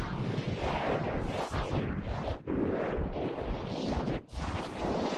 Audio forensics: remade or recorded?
recorded